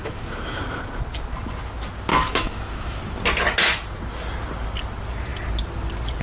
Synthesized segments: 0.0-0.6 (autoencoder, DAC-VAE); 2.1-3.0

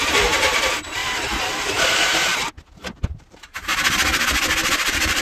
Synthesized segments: 0.0-1.0 (vocoder, BigVGAN v2); 1.6-2.3; 3.2-3.7; 4.7-5.2

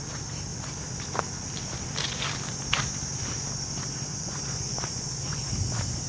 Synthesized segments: 4.1-5.5 (vocoder, Vocos)

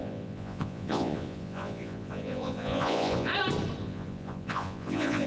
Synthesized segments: 0.0-3.3 (vocoder, Vocos); 3.8-5.3

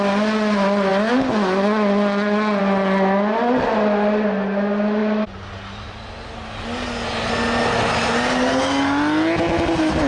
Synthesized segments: none